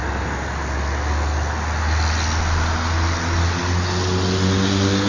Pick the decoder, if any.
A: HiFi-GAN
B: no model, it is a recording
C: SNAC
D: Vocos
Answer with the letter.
B